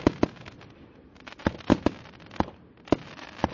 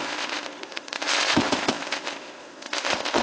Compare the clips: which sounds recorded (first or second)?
first